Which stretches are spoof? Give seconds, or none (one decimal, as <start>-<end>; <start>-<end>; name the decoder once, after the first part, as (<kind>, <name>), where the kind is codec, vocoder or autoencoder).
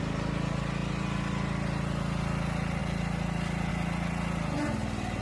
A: none